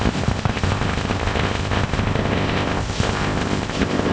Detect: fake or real fake